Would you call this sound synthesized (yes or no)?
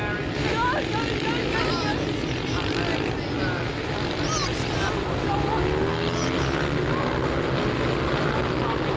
no